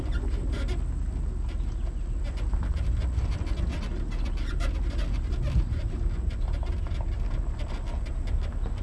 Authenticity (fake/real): real